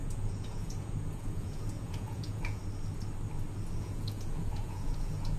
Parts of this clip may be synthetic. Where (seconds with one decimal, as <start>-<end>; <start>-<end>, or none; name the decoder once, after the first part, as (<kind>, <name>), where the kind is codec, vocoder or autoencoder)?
0.0-2.6 (vocoder, Vocos); 3.8-5.4